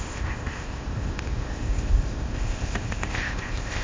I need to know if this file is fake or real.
fake